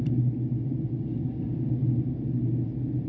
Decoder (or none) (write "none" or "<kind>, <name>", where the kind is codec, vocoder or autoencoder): none